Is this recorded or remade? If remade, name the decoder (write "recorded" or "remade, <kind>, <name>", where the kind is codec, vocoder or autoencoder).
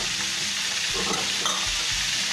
remade, vocoder, BigVGAN v2